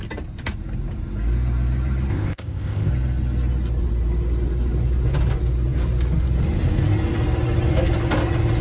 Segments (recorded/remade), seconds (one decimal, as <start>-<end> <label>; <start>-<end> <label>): 0.0-2.1 recorded; 2.1-2.9 remade; 2.9-8.6 recorded